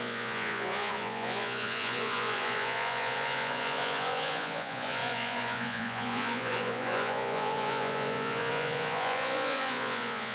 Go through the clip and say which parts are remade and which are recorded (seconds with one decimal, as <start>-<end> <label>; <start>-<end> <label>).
0.0-10.3 remade